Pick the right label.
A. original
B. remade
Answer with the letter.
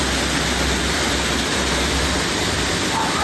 A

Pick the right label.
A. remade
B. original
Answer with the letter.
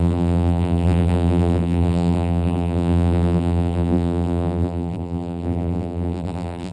A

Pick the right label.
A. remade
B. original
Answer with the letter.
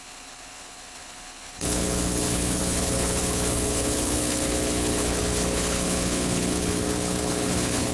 A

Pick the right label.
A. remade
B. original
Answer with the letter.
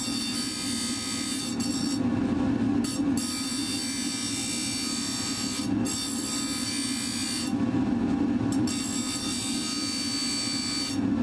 B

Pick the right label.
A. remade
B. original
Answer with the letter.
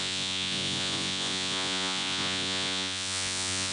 A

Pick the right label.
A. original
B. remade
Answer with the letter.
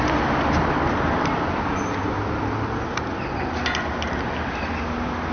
A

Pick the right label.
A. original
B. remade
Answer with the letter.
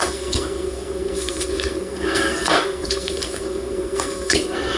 B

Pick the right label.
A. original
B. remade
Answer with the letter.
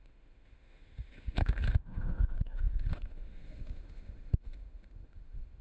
B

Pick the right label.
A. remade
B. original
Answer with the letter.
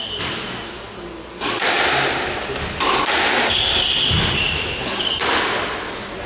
B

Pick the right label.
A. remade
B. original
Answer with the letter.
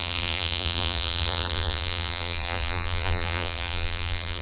A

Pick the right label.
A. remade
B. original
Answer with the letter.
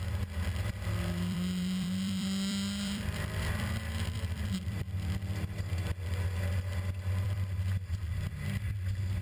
A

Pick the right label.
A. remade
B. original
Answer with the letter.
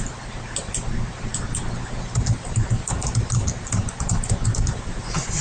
B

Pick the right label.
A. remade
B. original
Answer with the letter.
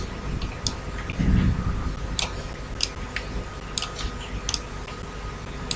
B